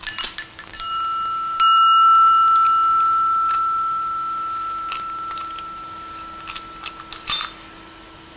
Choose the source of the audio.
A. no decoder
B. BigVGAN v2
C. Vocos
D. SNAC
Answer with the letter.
A